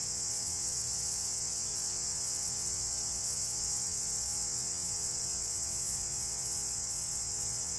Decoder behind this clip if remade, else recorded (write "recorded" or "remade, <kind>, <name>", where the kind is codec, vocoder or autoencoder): remade, vocoder, WaveNeXt